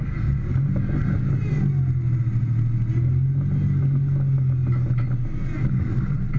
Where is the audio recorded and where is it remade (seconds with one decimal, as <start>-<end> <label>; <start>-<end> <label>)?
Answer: 0.0-6.4 recorded